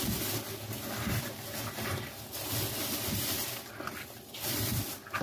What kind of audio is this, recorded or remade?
remade